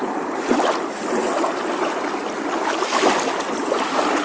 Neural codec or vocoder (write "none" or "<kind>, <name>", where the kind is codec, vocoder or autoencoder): none